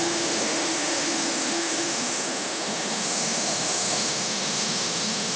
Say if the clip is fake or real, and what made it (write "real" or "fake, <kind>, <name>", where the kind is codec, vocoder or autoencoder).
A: fake, autoencoder, DAC-VAE